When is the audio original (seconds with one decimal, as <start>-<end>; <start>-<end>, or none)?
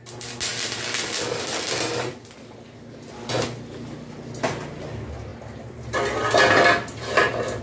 0.0-7.6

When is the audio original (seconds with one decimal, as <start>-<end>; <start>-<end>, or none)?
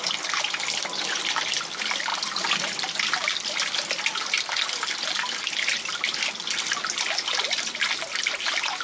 0.0-8.8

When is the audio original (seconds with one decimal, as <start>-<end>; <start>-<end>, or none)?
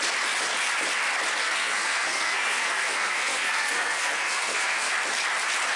0.0-1.4; 4.9-5.8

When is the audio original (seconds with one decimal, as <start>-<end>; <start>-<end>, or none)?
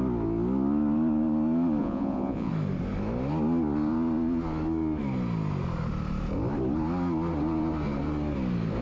0.0-1.8; 2.5-8.8